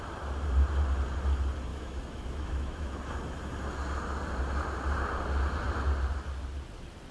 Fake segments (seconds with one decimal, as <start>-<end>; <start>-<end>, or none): 1.7-3.1